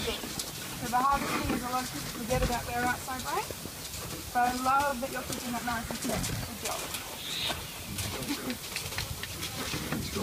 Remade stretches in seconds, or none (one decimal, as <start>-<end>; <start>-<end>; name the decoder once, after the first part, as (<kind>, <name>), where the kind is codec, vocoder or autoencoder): 4.9-5.9 (vocoder, BigVGAN v2)